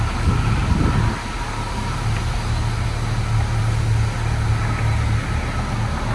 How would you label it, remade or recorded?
recorded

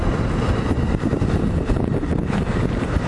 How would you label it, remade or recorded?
recorded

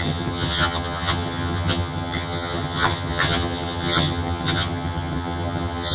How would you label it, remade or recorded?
remade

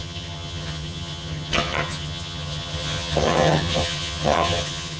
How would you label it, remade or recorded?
remade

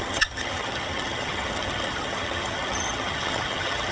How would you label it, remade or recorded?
remade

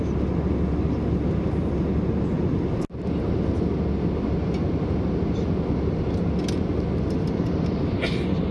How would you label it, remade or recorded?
recorded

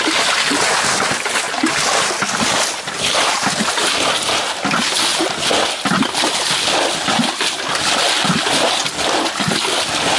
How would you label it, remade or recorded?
recorded